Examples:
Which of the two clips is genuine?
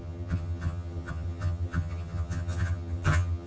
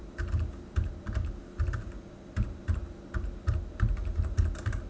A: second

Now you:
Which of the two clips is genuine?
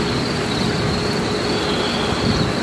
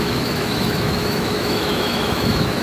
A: first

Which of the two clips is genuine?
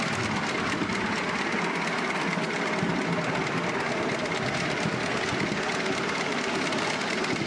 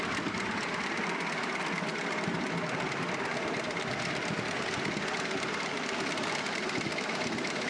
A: first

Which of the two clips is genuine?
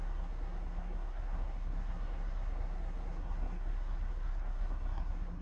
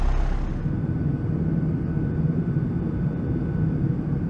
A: second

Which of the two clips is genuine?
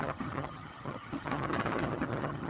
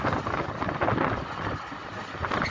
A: second